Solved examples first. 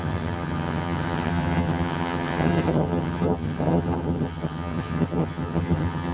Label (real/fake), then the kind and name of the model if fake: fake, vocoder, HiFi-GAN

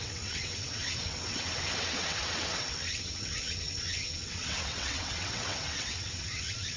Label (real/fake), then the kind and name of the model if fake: fake, vocoder, WaveNeXt